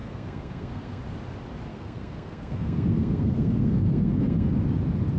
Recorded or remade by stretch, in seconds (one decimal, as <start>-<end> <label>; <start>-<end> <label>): 0.0-1.0 remade; 1.0-1.7 recorded; 1.7-4.5 remade; 4.5-5.2 recorded

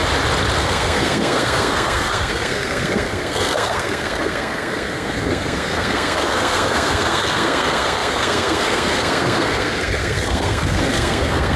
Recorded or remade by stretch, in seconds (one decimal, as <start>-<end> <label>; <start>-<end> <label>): 0.0-0.6 recorded; 0.6-11.6 remade

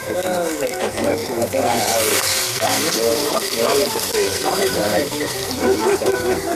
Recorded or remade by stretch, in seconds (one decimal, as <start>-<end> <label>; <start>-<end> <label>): 0.0-6.6 remade

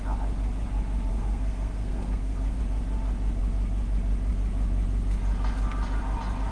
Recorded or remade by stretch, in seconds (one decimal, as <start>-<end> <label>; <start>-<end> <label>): 0.0-1.1 recorded; 1.1-2.6 remade; 2.6-6.5 recorded

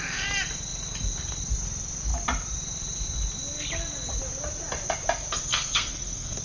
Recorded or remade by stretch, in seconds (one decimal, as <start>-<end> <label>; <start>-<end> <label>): 0.0-5.5 recorded; 5.5-6.4 remade

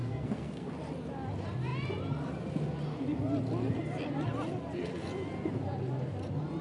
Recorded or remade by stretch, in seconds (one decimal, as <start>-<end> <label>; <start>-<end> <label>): 0.0-0.7 remade; 0.7-6.6 recorded